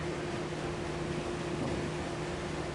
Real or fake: real